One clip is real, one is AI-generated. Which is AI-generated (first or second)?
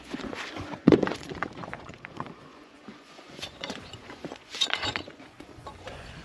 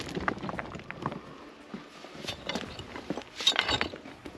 first